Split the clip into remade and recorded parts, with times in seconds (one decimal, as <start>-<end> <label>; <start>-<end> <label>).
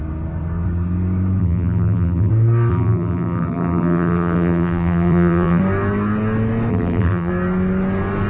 0.0-1.4 recorded; 1.4-2.3 remade; 2.3-2.7 recorded; 2.7-5.6 remade; 5.6-6.7 recorded; 6.7-7.3 remade; 7.3-8.3 recorded